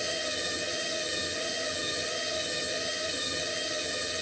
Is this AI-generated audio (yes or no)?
yes